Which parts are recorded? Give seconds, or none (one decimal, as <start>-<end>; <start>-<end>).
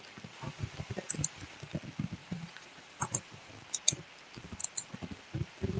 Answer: 0.0-2.2; 3.5-4.6; 5.2-5.8